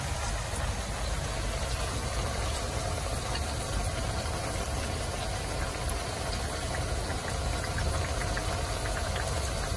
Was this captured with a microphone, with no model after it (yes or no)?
yes